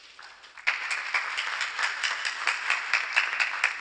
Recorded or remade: recorded